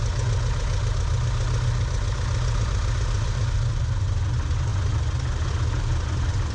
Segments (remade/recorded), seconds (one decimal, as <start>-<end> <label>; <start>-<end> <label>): 0.0-6.5 recorded